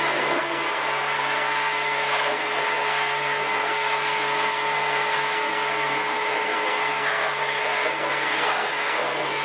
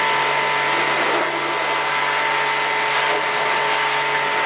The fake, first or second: first